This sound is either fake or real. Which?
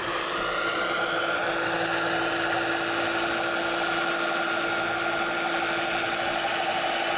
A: real